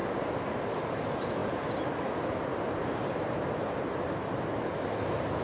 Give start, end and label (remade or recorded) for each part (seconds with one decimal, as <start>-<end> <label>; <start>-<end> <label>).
0.0-5.4 recorded